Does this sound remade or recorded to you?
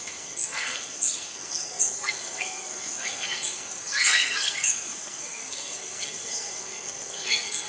remade